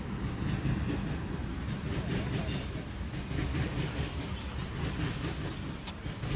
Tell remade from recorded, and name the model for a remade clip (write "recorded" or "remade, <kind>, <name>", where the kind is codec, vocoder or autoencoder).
recorded